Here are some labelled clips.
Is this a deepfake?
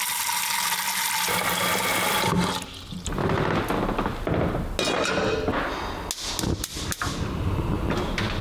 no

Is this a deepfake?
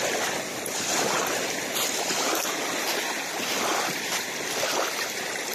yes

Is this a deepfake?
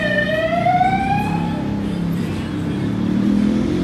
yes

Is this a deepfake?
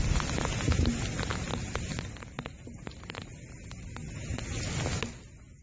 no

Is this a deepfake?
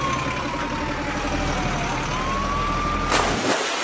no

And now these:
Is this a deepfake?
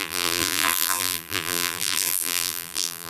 yes